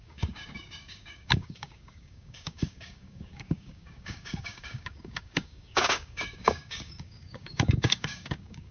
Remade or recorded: remade